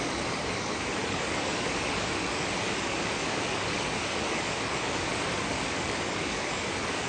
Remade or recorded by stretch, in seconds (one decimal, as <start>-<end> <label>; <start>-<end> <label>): 0.0-7.1 remade